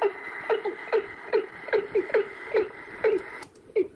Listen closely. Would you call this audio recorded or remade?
recorded